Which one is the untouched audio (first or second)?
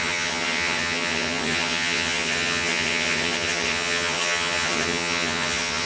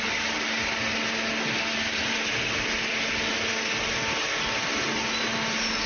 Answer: second